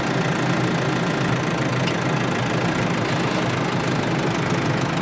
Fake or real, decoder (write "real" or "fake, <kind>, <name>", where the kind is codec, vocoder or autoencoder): real